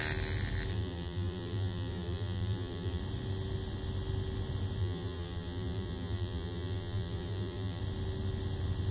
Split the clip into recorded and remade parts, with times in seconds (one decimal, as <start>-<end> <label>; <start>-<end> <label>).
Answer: 0.0-0.7 recorded; 0.7-3.0 remade; 3.0-4.8 recorded; 4.8-7.8 remade; 7.8-8.9 recorded